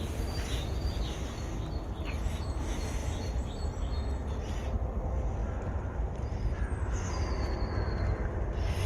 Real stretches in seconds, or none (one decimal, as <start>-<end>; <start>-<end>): 0.0-3.0; 3.7-5.4; 6.4-8.9